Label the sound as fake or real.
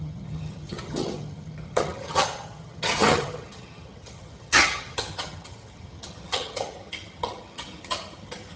fake